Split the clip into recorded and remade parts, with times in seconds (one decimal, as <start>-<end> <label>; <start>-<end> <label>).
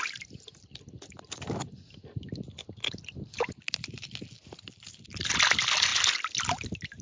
0.0-7.0 recorded